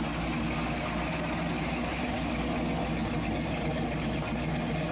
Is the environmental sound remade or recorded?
recorded